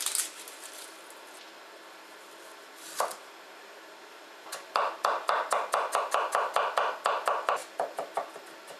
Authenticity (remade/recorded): recorded